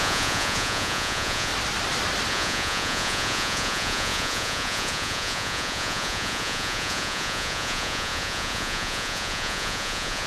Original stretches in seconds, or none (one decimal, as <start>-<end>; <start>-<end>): 1.5-2.3